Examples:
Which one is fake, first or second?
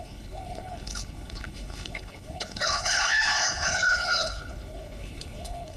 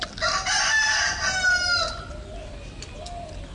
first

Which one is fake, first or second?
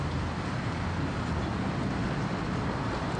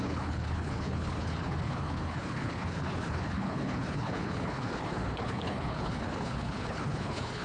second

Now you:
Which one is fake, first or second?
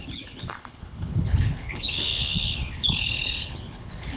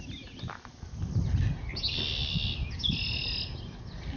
first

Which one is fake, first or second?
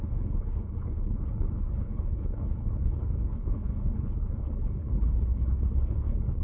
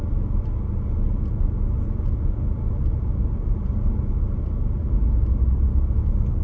first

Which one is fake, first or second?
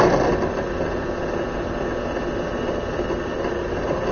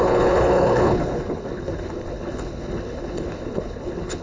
second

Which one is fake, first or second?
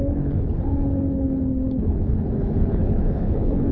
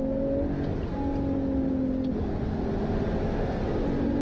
first